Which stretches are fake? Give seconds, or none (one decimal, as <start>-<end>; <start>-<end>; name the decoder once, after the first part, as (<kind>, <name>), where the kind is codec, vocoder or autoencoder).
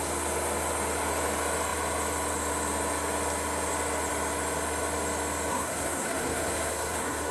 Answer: 5.5-7.3 (codec, SNAC)